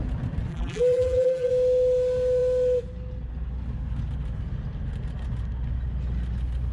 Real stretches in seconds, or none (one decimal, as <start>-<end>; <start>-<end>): 0.0-0.5; 1.5-6.7